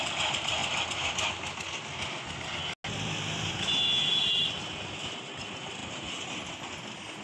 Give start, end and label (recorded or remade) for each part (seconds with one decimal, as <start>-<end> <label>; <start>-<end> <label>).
0.0-7.2 recorded